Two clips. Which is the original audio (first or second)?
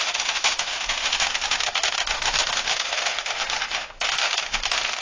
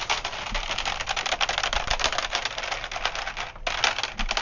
second